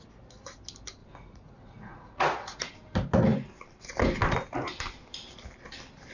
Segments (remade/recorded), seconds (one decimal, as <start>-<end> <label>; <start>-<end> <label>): 0.0-1.0 recorded; 1.0-2.7 remade; 2.7-6.1 recorded